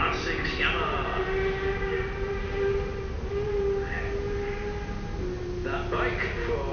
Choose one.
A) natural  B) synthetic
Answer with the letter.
A